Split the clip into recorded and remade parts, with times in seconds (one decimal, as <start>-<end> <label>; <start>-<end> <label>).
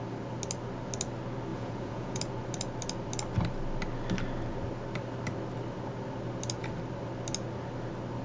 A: 0.0-1.5 recorded; 1.5-2.2 remade; 2.2-8.2 recorded